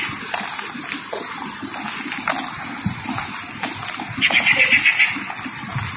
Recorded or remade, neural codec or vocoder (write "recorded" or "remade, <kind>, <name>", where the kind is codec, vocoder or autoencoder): recorded